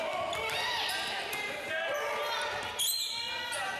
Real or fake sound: real